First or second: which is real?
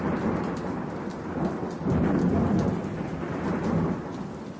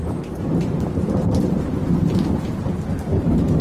first